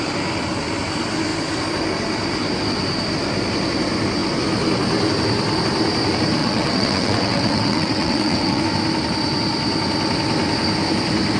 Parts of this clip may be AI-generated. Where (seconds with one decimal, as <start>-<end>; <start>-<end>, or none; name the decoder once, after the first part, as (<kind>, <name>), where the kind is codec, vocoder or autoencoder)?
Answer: 6.4-8.6 (vocoder, WaveNeXt)